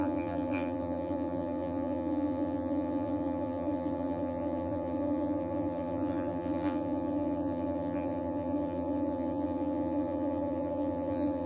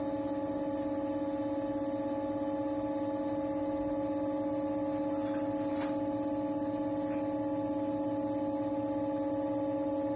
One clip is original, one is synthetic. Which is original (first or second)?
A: second